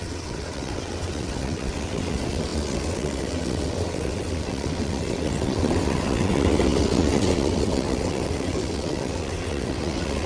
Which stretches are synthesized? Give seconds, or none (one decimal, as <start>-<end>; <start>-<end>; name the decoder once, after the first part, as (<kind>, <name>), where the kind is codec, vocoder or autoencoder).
0.0-10.3 (vocoder, WaveNeXt)